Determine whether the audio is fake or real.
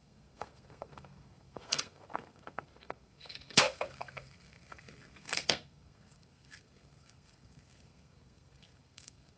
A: fake